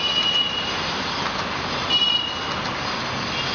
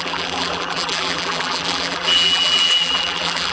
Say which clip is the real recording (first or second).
first